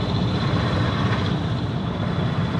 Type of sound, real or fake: fake